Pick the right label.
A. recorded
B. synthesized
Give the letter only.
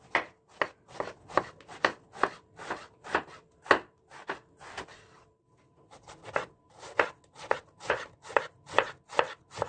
A